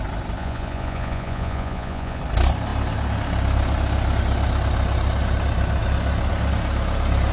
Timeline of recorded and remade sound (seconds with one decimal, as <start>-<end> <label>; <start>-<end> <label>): 0.0-0.4 recorded; 0.4-2.2 remade; 2.2-7.3 recorded

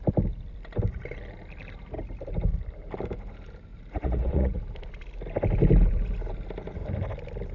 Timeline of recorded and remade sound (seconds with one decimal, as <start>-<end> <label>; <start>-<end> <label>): 0.0-3.7 recorded; 3.7-4.6 remade; 4.6-7.5 recorded